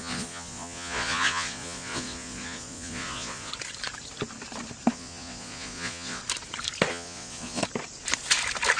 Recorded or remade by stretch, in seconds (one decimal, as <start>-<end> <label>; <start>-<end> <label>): 0.0-3.5 remade; 3.5-4.9 recorded; 4.9-6.2 remade; 6.2-6.9 recorded; 6.9-7.6 remade; 7.6-8.8 recorded

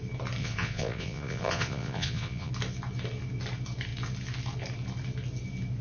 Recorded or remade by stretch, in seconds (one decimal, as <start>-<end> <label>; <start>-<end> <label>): 0.0-0.4 recorded; 0.4-2.5 remade; 2.5-5.8 recorded